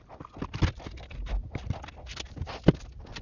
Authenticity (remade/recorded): recorded